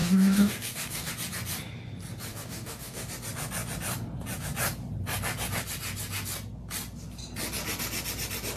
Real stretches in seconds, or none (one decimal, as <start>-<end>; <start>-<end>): 1.1-2.3; 3.1-8.6